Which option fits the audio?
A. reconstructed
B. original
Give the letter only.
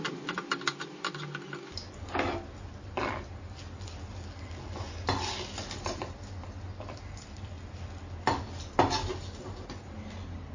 B